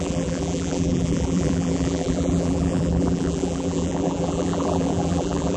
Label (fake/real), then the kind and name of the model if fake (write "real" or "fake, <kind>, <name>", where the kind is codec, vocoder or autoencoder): fake, vocoder, BigVGAN v2